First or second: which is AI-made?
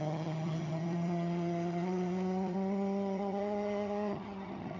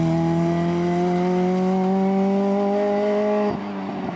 first